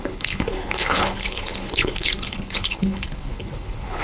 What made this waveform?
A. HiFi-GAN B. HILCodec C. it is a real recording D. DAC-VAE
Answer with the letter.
B